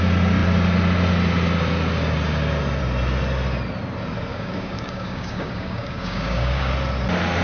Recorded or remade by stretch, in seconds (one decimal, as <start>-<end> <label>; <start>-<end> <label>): 0.0-4.3 recorded; 4.3-6.7 remade; 6.7-7.4 recorded